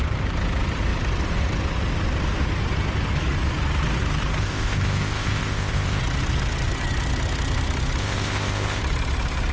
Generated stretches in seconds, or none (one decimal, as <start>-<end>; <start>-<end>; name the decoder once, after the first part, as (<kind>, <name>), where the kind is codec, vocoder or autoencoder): 4.4-6.0 (codec, ZipCodec); 8.0-8.8